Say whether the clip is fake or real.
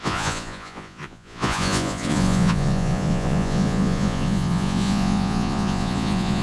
fake